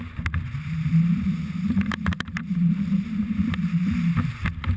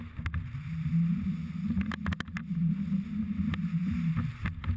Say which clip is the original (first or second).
second